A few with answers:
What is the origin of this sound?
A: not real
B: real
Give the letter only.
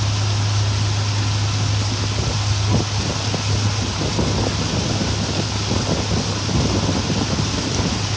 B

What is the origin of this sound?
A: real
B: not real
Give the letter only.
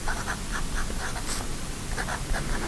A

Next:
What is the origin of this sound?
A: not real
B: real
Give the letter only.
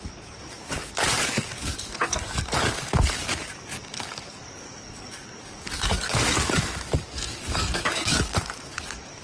A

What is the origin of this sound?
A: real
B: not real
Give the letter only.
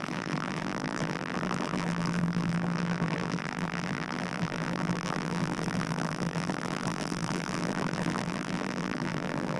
B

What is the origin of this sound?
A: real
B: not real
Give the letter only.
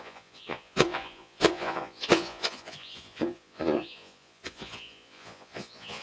B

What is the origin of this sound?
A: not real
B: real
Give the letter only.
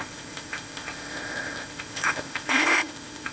A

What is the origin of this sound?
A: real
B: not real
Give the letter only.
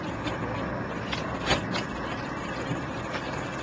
A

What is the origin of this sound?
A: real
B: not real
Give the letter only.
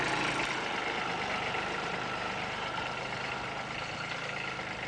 A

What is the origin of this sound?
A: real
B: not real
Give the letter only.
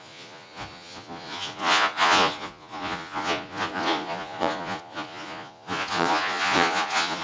B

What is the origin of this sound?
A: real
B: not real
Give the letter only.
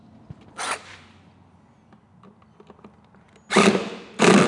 A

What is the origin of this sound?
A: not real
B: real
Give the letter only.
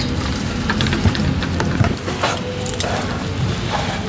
B